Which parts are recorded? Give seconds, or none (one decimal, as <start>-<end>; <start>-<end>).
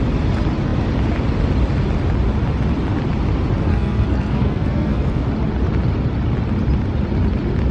0.0-3.7; 5.1-7.7